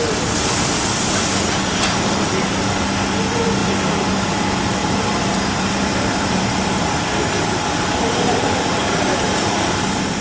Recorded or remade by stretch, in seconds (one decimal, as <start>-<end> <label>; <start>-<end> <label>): 0.0-4.8 recorded; 4.8-10.2 remade